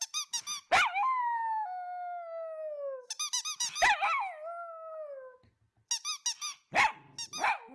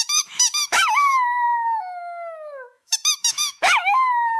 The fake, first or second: second